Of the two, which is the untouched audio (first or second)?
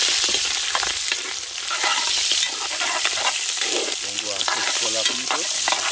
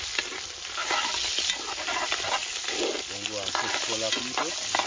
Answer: second